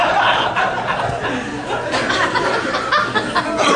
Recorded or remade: recorded